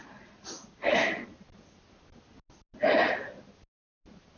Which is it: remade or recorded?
recorded